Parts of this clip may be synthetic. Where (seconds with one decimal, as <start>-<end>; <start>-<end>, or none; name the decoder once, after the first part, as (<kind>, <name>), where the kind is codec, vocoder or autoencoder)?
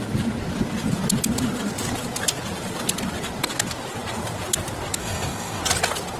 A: 5.0-5.6 (codec, DAC)